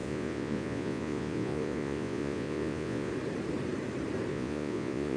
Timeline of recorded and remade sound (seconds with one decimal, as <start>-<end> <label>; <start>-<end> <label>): 0.0-3.1 remade; 3.1-4.3 recorded; 4.3-5.2 remade